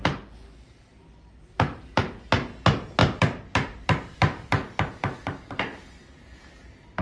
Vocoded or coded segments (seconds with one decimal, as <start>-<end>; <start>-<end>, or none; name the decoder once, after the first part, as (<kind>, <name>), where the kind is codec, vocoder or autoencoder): 3.0-5.6 (vocoder, BigVGAN v2)